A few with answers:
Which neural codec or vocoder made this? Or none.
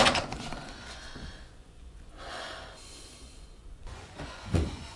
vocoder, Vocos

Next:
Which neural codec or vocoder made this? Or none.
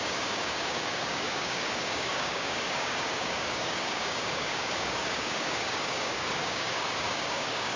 codec, DAC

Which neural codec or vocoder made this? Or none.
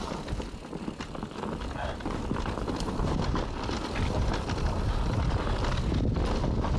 none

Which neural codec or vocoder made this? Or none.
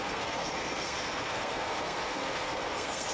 codec, SNAC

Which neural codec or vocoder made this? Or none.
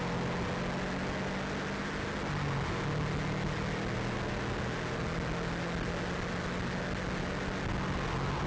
none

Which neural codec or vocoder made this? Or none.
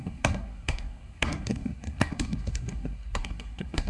codec, SNAC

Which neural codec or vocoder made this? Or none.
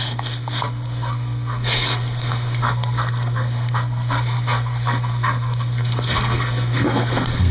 codec, SNAC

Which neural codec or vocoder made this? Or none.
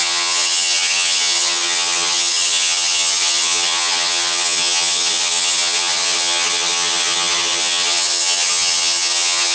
vocoder, HiFi-GAN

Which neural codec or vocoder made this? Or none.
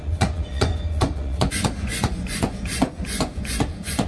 vocoder, Vocos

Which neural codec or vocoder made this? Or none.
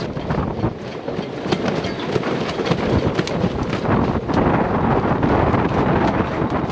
none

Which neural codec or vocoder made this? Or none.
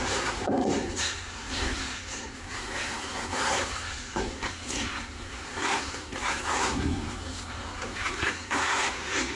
codec, SNAC